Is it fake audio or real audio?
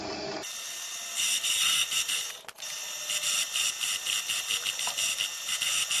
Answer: real